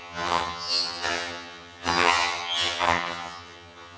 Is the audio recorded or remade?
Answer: remade